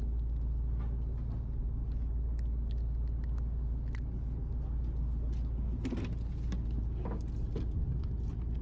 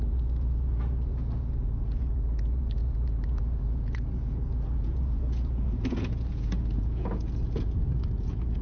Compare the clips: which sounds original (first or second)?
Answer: first